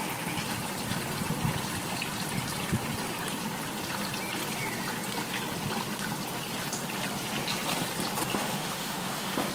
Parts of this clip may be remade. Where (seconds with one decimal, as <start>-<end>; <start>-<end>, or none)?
8.3-9.5